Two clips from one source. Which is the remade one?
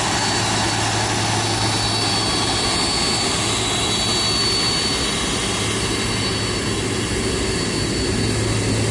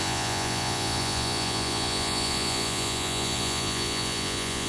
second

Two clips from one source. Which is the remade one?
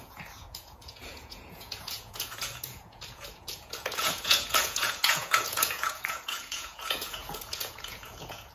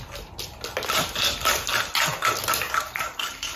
first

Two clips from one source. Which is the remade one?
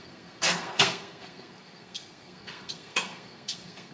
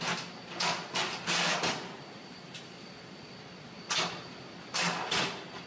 first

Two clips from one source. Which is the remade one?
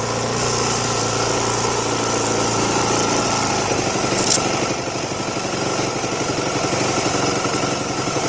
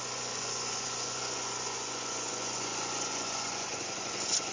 second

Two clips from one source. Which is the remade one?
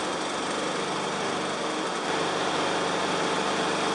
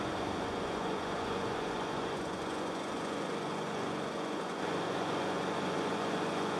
second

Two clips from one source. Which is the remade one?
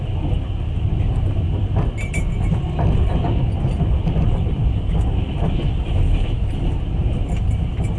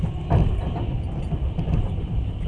second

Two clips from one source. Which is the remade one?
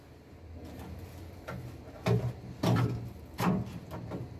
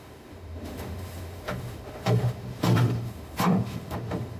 second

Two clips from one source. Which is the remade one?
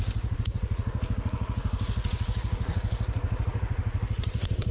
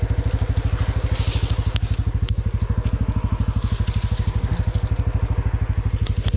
first